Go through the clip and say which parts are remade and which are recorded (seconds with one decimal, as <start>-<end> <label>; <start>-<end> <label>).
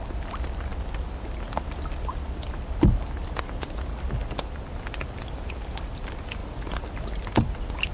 0.0-7.9 recorded